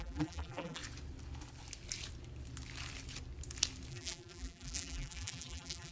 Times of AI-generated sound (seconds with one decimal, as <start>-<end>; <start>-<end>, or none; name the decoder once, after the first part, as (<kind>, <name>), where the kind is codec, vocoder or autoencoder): 0.0-0.8 (vocoder, BigVGAN v2); 3.9-5.9